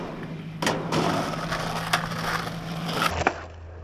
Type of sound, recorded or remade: recorded